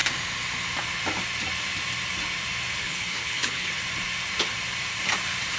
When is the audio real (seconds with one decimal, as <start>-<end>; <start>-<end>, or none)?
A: 0.0-2.8; 3.7-5.6